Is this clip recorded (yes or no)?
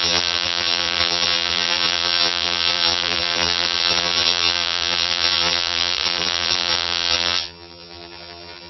no